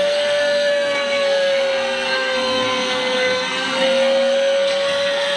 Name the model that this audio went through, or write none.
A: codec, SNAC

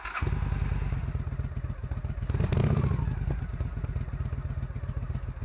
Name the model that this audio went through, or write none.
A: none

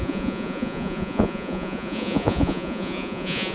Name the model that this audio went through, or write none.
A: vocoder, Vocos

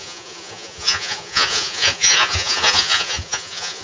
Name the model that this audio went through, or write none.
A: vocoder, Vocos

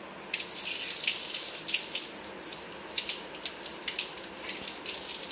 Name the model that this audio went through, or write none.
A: none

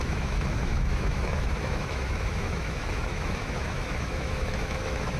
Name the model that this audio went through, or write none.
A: autoencoder, DAC-VAE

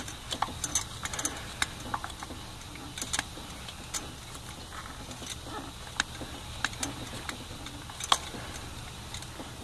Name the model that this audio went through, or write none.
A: none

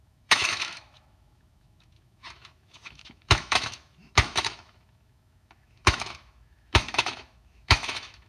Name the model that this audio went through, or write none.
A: autoencoder, DAC-VAE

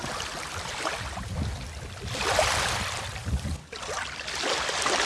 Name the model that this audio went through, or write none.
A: none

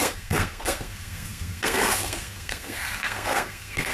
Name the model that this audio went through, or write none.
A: codec, SNAC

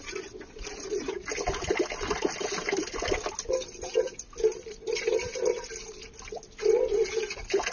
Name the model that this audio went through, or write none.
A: none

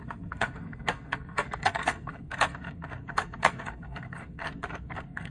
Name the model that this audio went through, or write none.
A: codec, SNAC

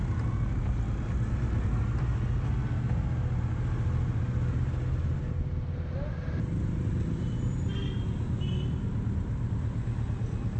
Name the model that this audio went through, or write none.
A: none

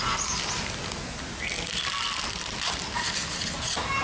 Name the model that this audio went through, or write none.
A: none